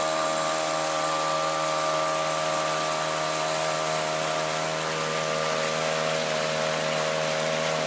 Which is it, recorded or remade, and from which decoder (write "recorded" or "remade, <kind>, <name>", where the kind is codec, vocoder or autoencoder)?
recorded